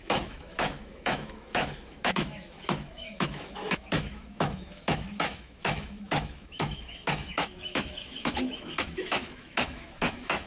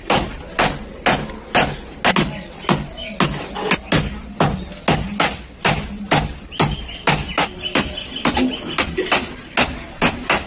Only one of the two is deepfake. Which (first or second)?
first